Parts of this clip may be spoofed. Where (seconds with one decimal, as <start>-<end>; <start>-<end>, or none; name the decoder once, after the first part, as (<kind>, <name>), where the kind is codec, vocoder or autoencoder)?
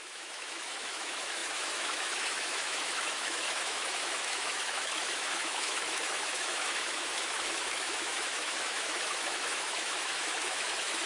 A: 0.0-11.1 (autoencoder, DAC-VAE)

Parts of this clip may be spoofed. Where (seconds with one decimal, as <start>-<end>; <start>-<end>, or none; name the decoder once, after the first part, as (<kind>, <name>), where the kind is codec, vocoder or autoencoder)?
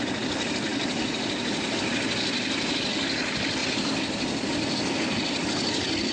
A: none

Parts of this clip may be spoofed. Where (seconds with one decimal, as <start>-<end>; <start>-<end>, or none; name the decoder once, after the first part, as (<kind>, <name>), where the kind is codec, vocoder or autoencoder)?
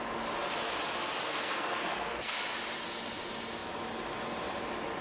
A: 1.2-2.4 (codec, SNAC)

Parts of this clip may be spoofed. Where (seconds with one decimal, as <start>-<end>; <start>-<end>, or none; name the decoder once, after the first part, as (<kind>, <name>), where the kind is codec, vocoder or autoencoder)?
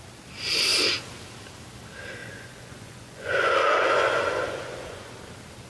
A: 2.2-5.1 (vocoder, Vocos)